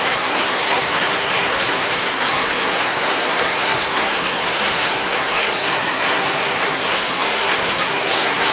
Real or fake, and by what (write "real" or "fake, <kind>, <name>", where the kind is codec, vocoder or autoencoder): fake, codec, SNAC